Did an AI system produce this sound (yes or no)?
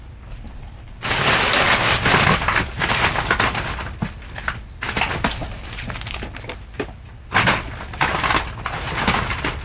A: no